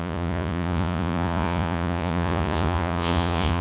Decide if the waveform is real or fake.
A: fake